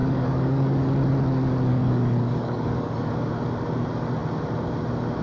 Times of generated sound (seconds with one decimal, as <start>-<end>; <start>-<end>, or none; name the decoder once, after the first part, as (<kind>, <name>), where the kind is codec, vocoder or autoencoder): 0.0-1.1 (codec, DAC); 1.7-3.1